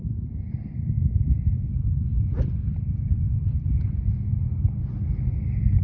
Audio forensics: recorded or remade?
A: recorded